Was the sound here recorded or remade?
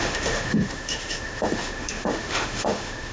remade